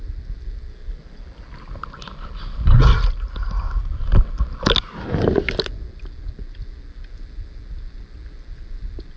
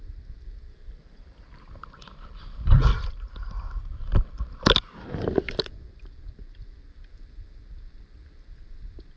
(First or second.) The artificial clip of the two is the second